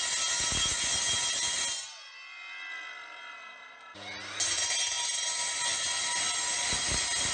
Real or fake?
real